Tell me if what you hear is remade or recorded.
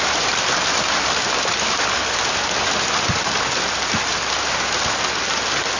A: recorded